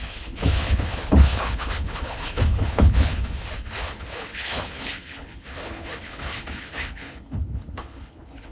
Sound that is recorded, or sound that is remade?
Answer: remade